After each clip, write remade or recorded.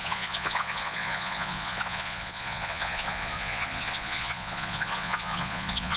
remade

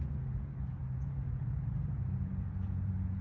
remade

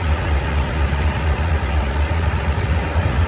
remade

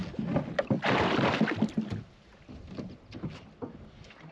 recorded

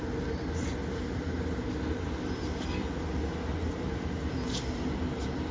recorded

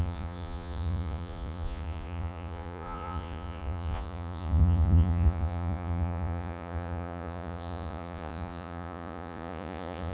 remade